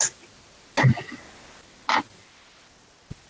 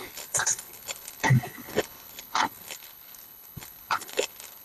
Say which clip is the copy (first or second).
second